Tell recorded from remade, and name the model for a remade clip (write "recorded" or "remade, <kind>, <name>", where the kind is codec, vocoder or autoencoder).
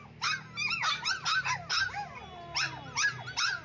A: recorded